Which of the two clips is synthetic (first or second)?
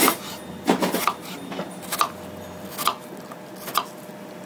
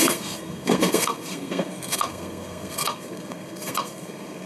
second